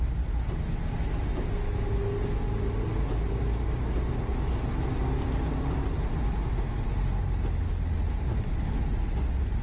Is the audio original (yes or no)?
yes